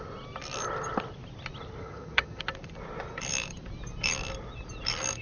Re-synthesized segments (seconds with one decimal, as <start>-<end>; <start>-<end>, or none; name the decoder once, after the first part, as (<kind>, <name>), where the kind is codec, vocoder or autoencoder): 1.8-2.4 (vocoder, HiFi-GAN)